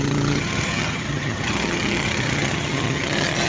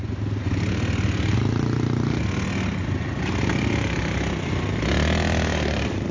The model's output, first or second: first